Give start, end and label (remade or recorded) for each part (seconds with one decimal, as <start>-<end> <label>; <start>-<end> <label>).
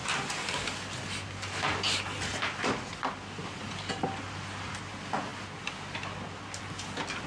0.0-7.3 recorded